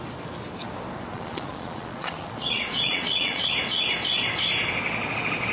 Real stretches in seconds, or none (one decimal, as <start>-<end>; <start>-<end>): 0.0-1.1; 3.5-5.5